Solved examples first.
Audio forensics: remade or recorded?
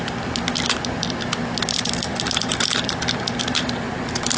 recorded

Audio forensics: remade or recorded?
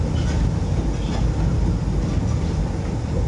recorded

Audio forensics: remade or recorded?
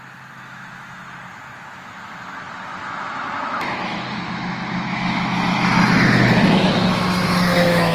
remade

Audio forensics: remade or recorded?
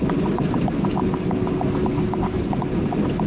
recorded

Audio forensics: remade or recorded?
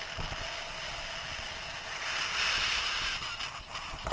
recorded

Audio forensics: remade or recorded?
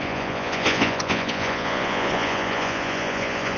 remade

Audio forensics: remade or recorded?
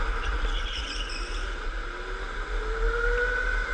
recorded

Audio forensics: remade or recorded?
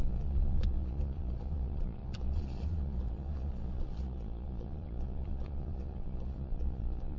remade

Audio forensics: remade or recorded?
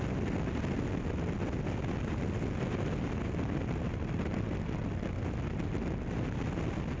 recorded